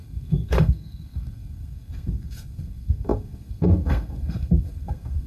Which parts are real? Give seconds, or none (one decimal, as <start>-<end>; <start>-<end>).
none

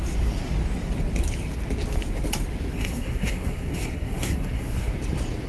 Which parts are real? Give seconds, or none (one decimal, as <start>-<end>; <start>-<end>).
0.0-2.7; 4.9-5.5